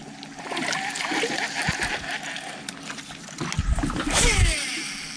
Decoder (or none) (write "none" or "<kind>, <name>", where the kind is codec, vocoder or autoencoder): none